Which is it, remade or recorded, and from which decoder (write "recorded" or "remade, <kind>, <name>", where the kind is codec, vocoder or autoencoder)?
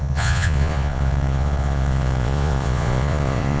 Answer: remade, vocoder, Vocos